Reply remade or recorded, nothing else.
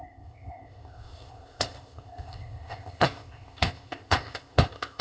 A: remade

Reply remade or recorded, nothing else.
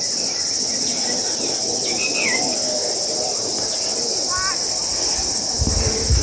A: recorded